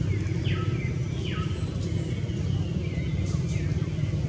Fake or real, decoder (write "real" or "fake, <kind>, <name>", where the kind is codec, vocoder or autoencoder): real